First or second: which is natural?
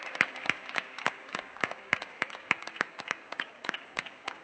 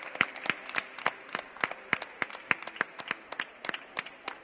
second